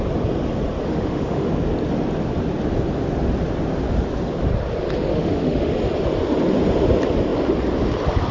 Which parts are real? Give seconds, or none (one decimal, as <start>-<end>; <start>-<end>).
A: 0.0-0.8; 1.5-5.1; 5.7-8.3